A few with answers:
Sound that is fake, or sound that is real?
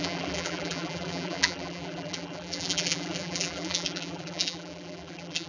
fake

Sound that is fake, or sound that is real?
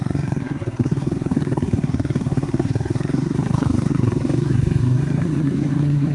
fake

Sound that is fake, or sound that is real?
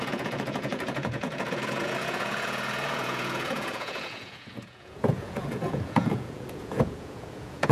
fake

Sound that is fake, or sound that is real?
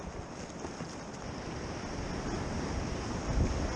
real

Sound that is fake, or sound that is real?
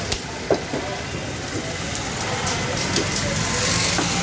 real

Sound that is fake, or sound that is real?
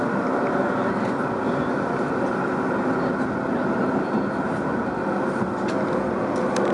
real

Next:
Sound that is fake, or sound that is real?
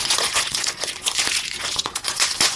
fake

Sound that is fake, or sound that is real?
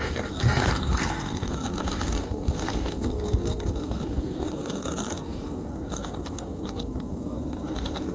fake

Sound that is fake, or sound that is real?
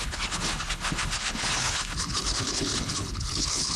fake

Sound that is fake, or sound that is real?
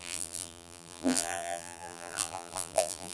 fake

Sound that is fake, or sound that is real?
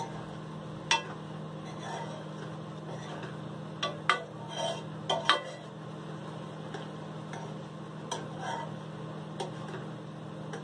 real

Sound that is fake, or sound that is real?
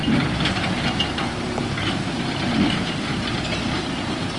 real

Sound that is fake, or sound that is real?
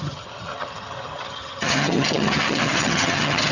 fake